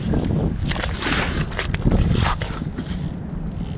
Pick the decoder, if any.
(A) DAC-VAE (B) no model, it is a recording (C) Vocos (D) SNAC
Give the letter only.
B